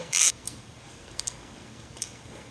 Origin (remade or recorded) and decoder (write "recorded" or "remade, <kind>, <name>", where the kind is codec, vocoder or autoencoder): remade, codec, SNAC